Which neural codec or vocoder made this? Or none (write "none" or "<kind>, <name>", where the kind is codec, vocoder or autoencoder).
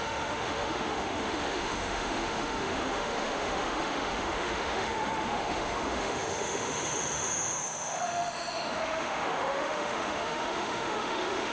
autoencoder, DAC-VAE